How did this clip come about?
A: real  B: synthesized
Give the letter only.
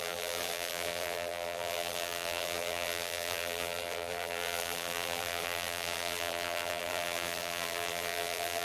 B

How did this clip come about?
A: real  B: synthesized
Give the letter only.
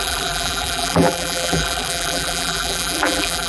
B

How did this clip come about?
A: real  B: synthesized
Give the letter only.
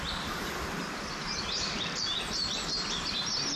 A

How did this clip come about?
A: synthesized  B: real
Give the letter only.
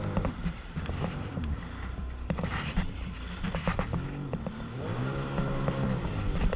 A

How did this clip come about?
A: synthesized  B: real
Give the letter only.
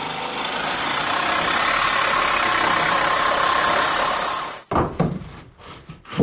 A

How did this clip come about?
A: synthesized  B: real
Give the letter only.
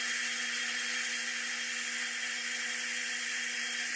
B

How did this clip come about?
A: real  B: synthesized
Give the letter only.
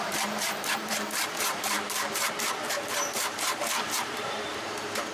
B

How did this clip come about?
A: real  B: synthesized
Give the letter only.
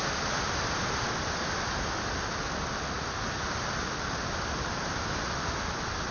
A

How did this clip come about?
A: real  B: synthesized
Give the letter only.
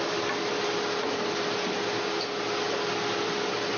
B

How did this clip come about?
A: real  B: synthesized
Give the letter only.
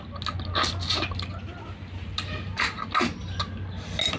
A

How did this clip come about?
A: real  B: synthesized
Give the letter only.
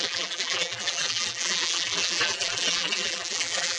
B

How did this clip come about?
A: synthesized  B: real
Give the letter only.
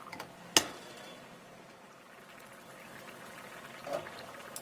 B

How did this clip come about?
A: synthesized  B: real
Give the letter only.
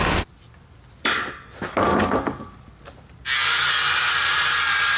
B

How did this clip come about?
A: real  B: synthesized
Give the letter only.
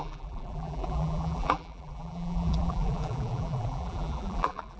B